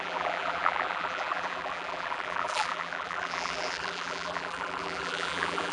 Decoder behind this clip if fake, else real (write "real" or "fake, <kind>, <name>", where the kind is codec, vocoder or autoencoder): fake, vocoder, BigVGAN v2